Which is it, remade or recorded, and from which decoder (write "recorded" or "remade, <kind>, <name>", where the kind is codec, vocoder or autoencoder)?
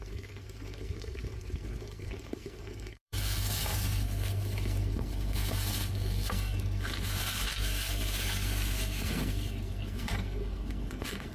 remade, codec, SNAC